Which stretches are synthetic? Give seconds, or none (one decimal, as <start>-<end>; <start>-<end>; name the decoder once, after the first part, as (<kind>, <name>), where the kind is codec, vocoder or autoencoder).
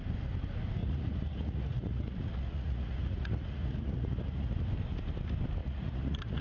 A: 0.8-4.6 (vocoder, Vocos); 5.6-6.4